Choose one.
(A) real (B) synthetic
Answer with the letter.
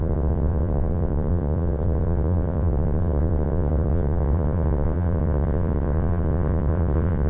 B